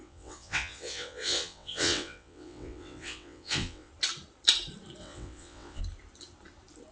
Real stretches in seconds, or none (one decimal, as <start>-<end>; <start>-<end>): 3.9-5.0; 5.8-6.9